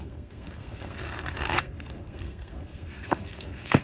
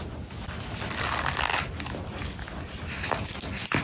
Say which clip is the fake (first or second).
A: first